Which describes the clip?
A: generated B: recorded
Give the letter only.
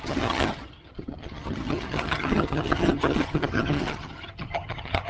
A